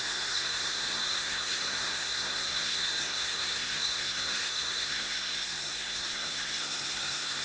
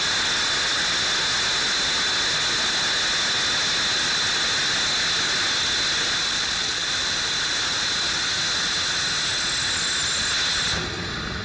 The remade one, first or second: first